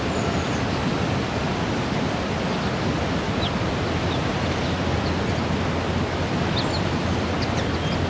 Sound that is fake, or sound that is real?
real